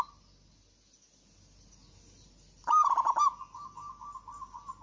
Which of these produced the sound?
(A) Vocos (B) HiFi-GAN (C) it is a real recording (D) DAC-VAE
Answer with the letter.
C